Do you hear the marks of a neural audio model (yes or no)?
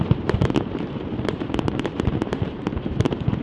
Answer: yes